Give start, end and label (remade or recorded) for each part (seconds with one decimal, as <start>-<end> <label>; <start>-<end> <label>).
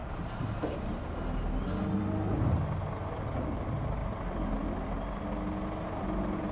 0.0-6.5 recorded